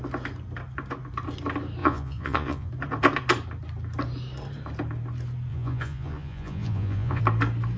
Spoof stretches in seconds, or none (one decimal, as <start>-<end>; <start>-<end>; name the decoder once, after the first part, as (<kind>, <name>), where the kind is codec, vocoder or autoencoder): 1.8-2.7 (vocoder, Vocos); 5.5-7.2